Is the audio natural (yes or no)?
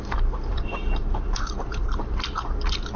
no